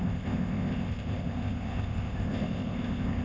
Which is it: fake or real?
fake